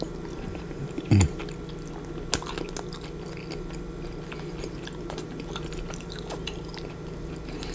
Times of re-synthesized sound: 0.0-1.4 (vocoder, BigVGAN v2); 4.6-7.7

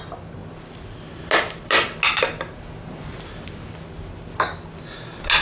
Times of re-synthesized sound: none

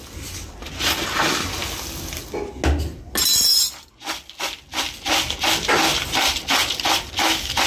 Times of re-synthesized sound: 5.9-7.1 (vocoder, BigVGAN v2)

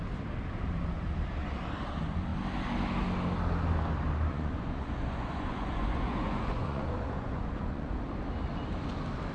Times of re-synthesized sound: 4.3-8.0 (vocoder, Vocos)

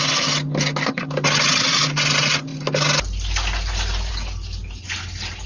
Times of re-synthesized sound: none

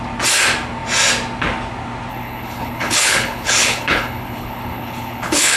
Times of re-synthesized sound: 2.1-5.6 (codec, HILCodec)

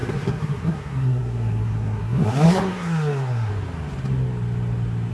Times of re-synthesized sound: 0.0-3.5 (codec, SNAC)